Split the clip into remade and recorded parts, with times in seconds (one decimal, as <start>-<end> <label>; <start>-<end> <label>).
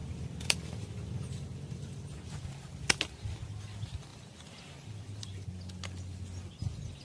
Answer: 0.0-2.1 remade; 2.1-4.1 recorded; 4.1-5.5 remade; 5.5-7.0 recorded